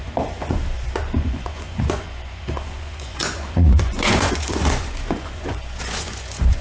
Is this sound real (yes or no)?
no